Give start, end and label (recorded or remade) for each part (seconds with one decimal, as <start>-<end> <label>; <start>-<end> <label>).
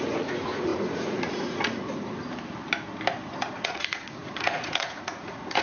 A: 0.0-1.8 remade; 1.8-3.5 recorded; 3.5-5.6 remade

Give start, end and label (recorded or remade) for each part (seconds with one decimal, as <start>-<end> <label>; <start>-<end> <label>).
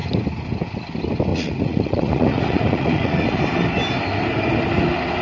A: 0.0-1.3 recorded; 1.3-3.4 remade; 3.4-5.2 recorded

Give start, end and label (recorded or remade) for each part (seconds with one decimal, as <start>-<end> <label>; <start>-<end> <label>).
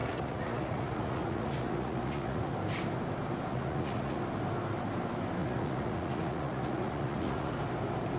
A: 0.0-2.5 remade; 2.5-3.5 recorded; 3.5-4.2 remade; 4.2-5.4 recorded; 5.4-7.5 remade; 7.5-8.2 recorded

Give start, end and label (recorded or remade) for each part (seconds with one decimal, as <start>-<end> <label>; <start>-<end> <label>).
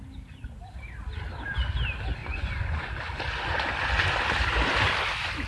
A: 0.0-2.2 recorded; 2.2-2.9 remade; 2.9-5.5 recorded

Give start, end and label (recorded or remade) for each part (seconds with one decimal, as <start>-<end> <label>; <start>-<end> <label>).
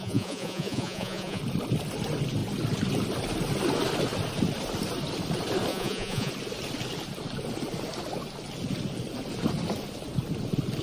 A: 0.0-1.4 remade; 1.4-5.7 recorded; 5.7-6.3 remade; 6.3-10.8 recorded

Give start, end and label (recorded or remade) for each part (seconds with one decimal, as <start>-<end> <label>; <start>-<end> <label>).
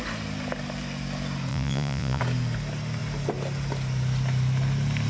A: 0.0-1.5 recorded; 1.5-2.2 remade; 2.2-5.1 recorded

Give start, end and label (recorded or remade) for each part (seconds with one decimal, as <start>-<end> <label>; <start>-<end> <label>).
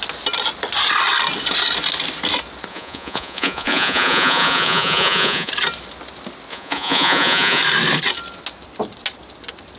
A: 0.0-2.7 recorded; 2.7-5.5 remade; 5.5-6.5 recorded; 6.5-7.6 remade; 7.6-9.8 recorded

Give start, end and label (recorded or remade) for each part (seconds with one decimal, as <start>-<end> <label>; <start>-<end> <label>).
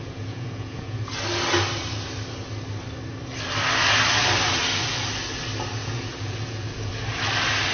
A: 0.0-1.1 remade; 1.1-5.8 recorded; 5.8-6.9 remade; 6.9-7.7 recorded